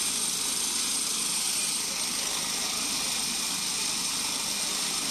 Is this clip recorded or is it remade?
remade